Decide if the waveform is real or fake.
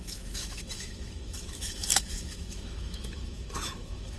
fake